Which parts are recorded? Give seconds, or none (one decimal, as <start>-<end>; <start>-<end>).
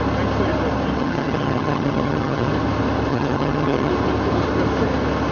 0.0-1.0; 2.5-3.1; 3.9-5.3